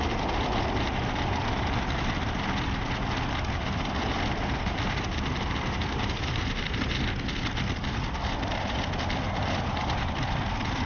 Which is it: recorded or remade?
recorded